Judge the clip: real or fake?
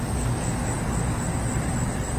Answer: real